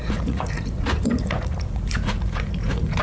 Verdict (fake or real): fake